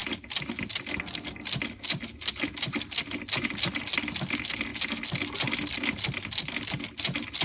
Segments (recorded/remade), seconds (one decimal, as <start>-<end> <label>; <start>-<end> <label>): 0.0-7.4 recorded